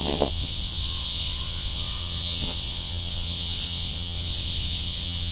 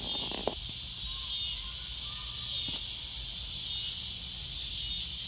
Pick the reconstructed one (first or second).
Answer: first